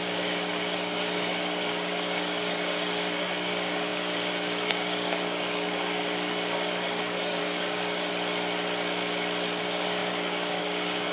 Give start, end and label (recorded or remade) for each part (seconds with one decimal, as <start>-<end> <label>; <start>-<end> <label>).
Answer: 0.0-8.1 remade; 8.1-9.6 recorded; 9.6-11.1 remade